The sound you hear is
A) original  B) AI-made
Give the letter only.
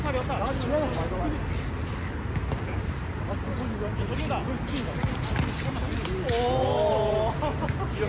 A